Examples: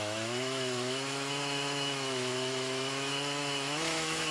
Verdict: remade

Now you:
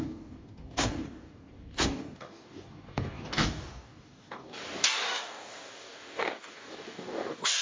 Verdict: remade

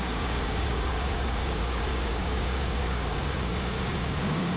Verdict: remade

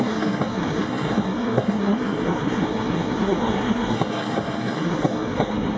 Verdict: remade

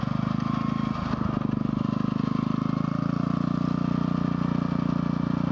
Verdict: recorded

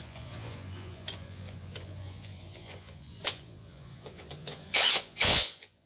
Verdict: remade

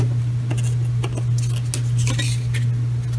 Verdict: recorded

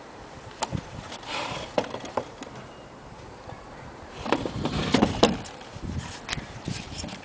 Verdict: remade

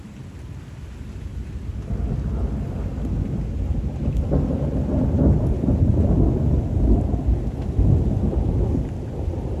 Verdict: recorded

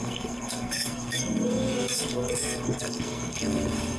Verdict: remade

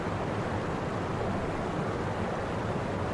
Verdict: recorded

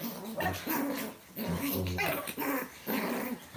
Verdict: recorded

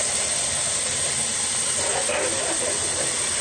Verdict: recorded